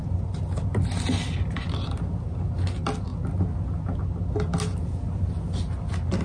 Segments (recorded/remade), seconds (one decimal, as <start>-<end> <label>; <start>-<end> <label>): 0.0-6.2 recorded